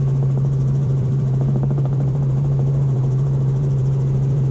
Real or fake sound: fake